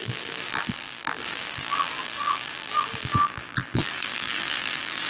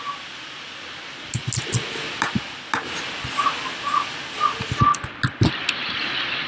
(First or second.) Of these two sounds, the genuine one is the second